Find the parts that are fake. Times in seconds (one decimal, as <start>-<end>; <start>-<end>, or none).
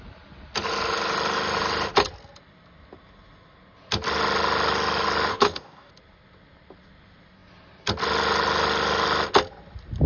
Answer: 5.3-5.9